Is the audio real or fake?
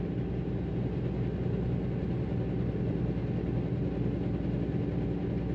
real